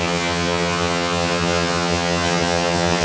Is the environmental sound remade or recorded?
remade